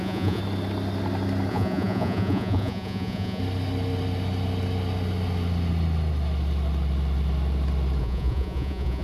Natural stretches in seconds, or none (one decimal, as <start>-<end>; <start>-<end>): 0.4-1.5; 3.4-8.0